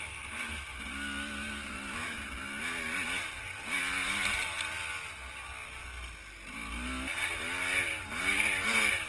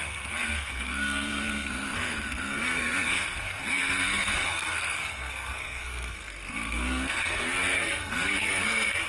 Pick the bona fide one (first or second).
first